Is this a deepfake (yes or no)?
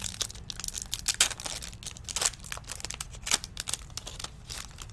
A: no